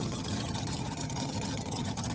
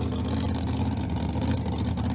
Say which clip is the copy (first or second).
first